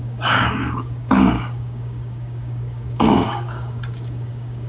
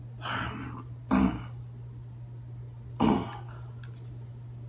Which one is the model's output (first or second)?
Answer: first